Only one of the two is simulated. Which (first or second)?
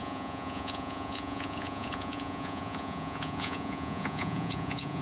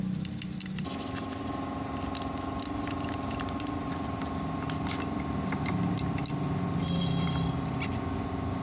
first